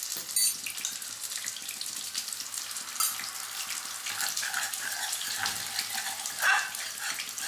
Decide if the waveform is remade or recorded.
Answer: recorded